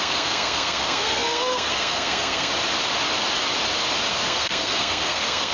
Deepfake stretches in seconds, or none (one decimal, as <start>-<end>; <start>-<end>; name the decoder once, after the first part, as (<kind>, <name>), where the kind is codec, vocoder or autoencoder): 0.0-2.5 (codec, SNAC); 4.1-5.5